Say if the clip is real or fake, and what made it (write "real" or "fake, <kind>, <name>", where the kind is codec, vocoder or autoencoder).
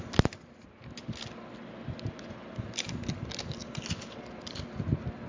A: real